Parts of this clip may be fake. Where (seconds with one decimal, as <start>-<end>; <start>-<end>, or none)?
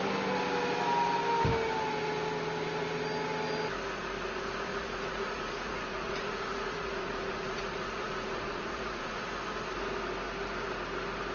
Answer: 4.7-9.2